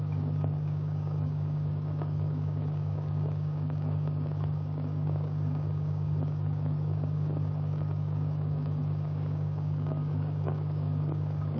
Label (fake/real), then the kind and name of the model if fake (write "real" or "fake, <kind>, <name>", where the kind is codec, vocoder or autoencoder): fake, codec, DAC